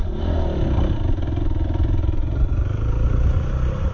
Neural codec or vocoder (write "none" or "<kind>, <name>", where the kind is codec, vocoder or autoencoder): none